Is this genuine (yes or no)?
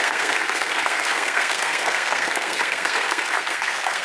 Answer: no